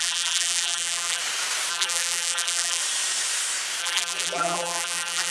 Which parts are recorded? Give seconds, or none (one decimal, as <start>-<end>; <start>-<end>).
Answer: 1.2-1.7; 2.8-3.8